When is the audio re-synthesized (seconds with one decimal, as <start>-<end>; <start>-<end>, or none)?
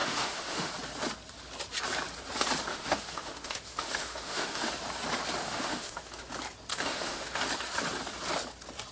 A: 0.0-0.7; 2.7-4.7; 5.4-6.3; 6.7-7.4